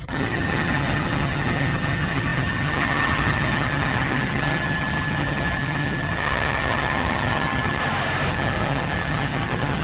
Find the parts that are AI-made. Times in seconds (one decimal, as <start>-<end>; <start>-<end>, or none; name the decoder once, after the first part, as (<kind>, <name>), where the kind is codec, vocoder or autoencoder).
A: 0.0-7.8 (vocoder, HiFi-GAN); 8.3-9.8

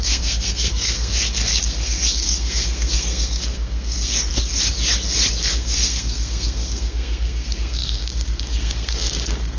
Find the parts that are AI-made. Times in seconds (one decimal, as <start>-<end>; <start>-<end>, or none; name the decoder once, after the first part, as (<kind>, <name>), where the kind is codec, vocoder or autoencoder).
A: 0.0-4.3 (codec, SNAC); 5.4-9.6

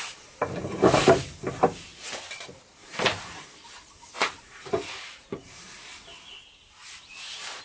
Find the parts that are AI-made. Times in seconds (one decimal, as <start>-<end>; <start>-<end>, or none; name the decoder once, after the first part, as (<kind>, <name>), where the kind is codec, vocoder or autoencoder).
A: 2.8-4.7 (vocoder, BigVGAN v2); 5.2-5.8